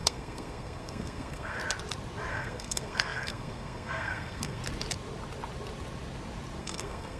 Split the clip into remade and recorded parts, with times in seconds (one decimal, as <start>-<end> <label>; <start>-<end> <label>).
0.0-1.6 remade; 1.6-2.3 recorded; 2.3-4.6 remade; 4.6-6.6 recorded; 6.6-7.2 remade